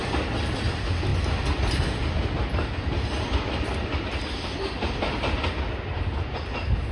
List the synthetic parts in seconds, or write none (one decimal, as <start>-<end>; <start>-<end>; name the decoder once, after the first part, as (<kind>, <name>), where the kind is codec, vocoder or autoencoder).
none